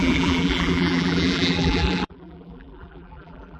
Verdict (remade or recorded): remade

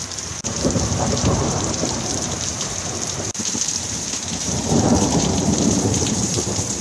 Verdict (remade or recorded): remade